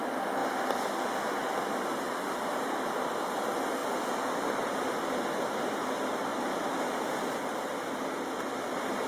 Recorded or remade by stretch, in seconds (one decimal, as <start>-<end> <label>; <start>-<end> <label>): 0.0-9.1 recorded